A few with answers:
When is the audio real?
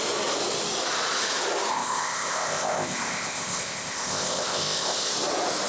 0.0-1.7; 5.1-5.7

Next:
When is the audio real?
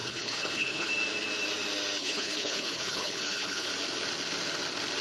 0.9-2.0; 3.7-5.0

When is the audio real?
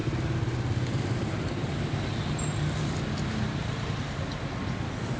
0.0-3.1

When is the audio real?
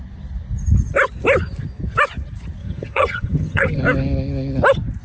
0.0-2.6; 3.8-5.0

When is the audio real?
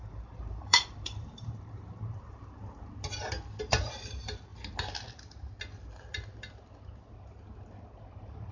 2.6-3.6; 4.5-8.1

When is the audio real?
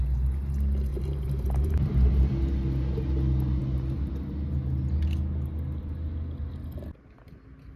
0.0-0.9; 2.3-7.8